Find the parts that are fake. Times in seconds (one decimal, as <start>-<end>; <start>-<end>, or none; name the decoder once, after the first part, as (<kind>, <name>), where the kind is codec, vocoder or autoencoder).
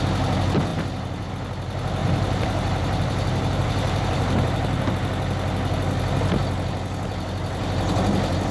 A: 0.7-1.3 (vocoder, BigVGAN v2); 2.0-4.9